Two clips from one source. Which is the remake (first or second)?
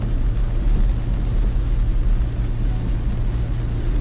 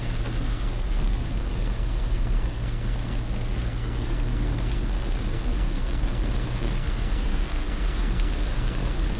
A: second